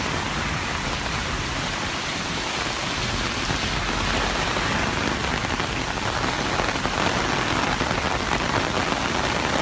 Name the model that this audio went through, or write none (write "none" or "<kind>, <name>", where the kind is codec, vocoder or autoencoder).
none